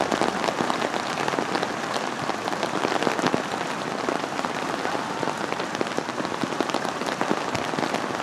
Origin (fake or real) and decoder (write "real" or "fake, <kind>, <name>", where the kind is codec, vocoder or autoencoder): real